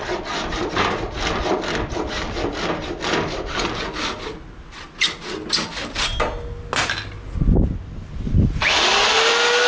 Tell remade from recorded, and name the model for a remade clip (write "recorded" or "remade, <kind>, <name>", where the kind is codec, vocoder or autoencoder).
recorded